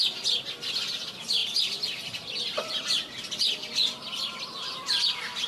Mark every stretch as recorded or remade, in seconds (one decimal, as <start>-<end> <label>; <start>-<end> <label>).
0.0-5.5 recorded